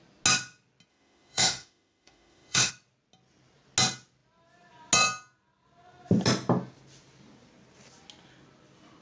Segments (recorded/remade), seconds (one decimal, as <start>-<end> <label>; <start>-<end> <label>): 0.0-0.9 recorded; 0.9-2.7 remade; 2.7-9.0 recorded